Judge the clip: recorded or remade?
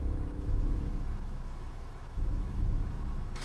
remade